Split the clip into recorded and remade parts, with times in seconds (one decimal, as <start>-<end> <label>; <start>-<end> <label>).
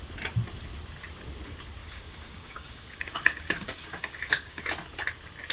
0.0-1.8 recorded; 1.8-4.6 remade; 4.6-5.5 recorded